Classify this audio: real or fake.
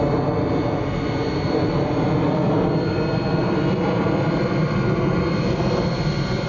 real